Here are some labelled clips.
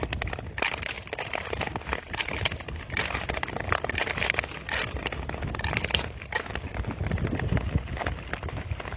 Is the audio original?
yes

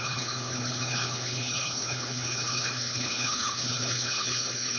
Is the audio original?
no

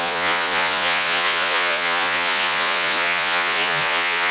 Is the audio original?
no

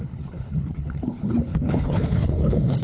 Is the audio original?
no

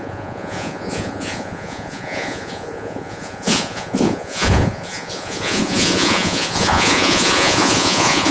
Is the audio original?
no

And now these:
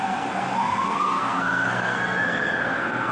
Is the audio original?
no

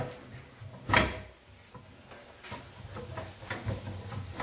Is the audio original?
yes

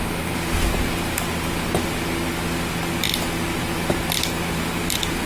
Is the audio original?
yes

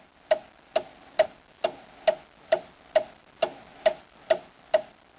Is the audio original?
yes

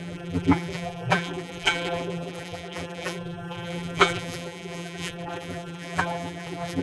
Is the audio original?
no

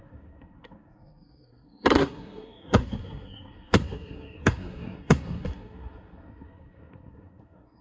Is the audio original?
no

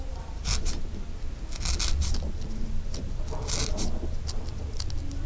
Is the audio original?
yes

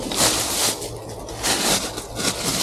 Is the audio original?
yes